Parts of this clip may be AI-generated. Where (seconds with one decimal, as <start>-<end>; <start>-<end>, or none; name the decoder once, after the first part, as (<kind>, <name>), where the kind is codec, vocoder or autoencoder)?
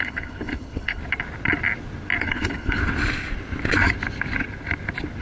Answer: 0.0-1.0 (codec, HILCodec); 2.2-2.8